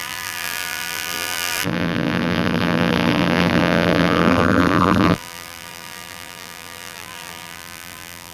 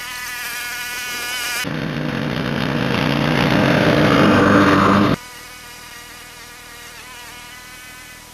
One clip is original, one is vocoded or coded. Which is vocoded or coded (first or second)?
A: first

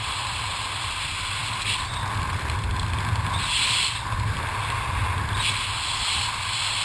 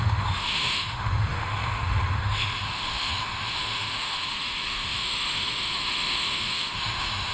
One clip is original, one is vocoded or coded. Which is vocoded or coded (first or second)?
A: second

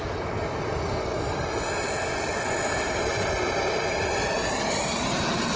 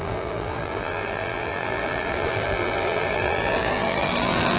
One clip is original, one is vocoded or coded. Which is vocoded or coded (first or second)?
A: second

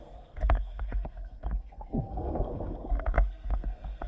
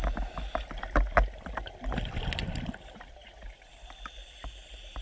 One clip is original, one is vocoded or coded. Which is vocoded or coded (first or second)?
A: first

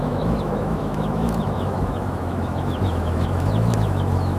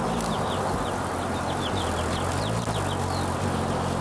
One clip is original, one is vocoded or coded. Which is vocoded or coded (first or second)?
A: first